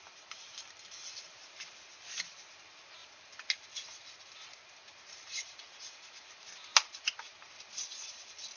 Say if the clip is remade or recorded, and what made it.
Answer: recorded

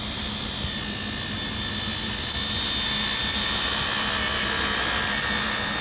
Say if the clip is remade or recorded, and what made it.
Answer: recorded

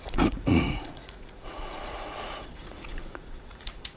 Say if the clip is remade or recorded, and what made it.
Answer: remade, vocoder, Vocos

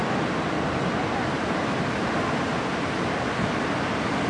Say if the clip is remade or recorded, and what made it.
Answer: recorded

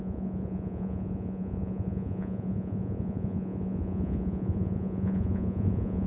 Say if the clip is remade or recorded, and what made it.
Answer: remade, vocoder, Vocos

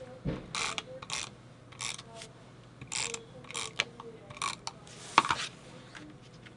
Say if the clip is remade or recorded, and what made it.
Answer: recorded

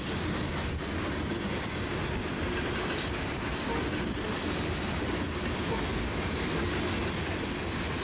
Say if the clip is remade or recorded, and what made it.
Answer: recorded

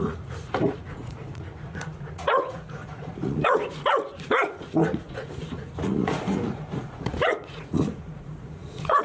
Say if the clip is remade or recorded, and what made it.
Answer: remade, vocoder, Vocos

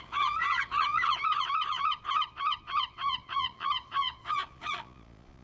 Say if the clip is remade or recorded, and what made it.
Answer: remade, vocoder, Vocos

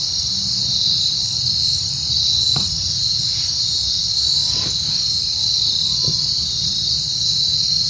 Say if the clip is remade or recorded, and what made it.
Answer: recorded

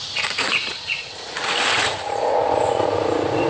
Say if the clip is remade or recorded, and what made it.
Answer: remade, vocoder, Vocos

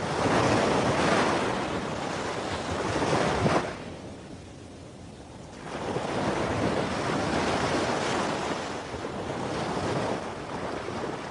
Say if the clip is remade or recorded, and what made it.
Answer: recorded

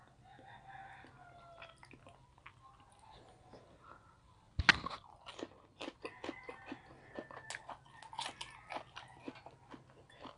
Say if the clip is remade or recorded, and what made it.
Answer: recorded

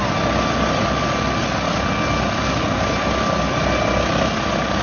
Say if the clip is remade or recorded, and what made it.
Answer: recorded